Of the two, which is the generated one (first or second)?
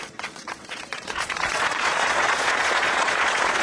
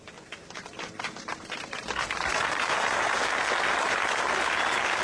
first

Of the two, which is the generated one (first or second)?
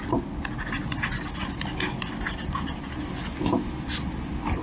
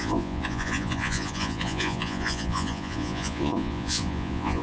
second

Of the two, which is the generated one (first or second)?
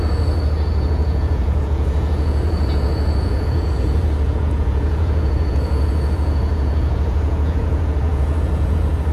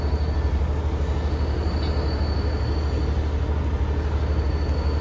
first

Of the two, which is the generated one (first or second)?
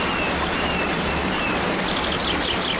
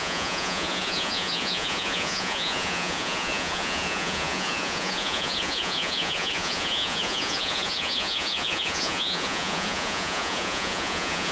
second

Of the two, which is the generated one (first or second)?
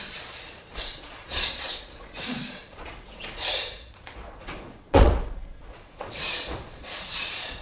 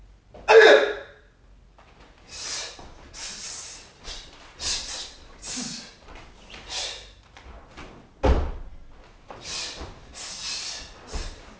first